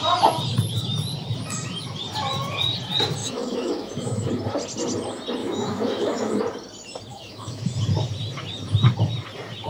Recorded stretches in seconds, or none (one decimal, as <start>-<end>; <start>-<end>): 0.0-3.2; 4.3-5.4; 6.4-7.1; 7.6-9.7